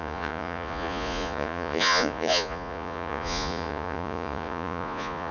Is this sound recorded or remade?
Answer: remade